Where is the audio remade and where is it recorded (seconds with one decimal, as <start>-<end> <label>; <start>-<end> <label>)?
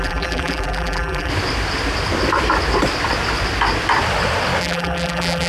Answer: 0.0-1.3 remade; 1.3-4.6 recorded; 4.6-5.5 remade